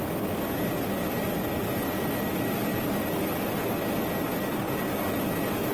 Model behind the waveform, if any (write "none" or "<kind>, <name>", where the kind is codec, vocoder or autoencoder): none